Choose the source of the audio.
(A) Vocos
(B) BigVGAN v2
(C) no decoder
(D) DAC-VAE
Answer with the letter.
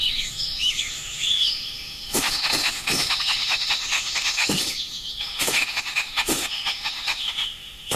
D